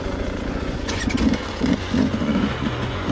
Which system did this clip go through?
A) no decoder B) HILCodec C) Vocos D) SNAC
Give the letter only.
C